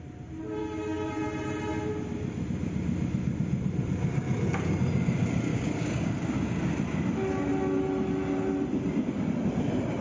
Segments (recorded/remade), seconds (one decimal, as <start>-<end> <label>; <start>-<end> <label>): 0.0-0.6 recorded; 0.6-1.1 remade; 1.1-5.5 recorded; 5.5-6.3 remade; 6.3-10.0 recorded